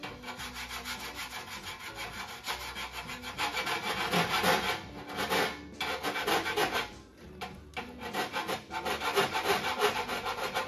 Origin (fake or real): real